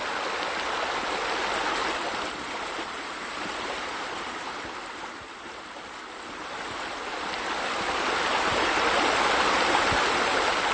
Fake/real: real